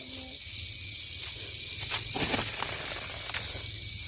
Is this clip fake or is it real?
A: real